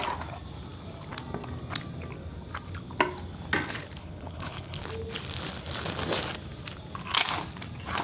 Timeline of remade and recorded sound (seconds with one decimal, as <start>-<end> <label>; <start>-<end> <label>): 0.0-4.0 recorded; 4.0-4.8 remade; 4.8-8.0 recorded